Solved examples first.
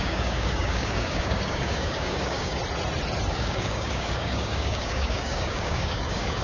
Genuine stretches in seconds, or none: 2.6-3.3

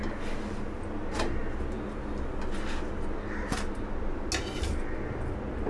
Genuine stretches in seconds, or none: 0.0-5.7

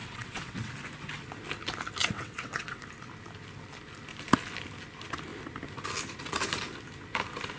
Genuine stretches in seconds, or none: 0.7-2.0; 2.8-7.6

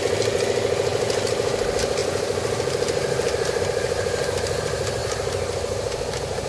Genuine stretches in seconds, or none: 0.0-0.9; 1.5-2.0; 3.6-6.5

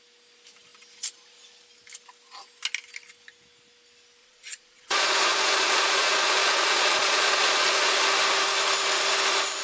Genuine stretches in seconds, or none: 0.0-4.2; 8.0-9.6

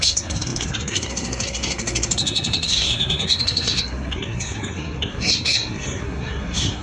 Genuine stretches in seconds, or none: none